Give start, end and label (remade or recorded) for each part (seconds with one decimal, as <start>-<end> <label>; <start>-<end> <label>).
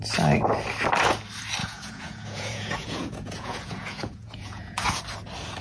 0.0-1.6 recorded; 1.6-5.0 remade; 5.0-5.6 recorded